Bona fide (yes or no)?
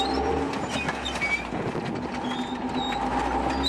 yes